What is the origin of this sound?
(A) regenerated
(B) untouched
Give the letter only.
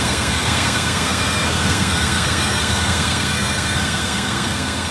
A